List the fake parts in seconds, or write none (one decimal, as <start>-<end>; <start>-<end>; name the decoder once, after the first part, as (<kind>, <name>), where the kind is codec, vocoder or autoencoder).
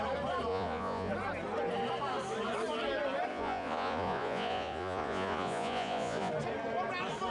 0.5-1.1 (vocoder, Vocos); 3.3-6.3